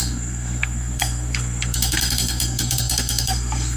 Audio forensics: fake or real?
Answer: fake